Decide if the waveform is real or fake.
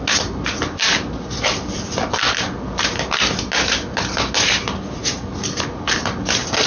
real